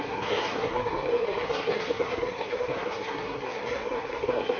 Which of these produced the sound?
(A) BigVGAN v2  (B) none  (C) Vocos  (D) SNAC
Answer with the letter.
D